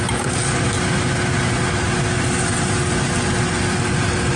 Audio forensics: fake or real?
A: real